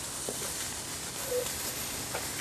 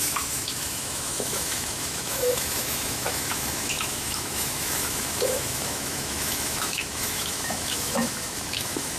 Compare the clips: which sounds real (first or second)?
first